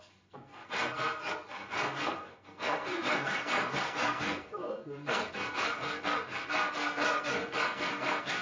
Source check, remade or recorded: remade